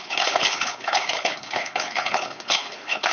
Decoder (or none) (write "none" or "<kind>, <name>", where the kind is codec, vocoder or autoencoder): codec, HILCodec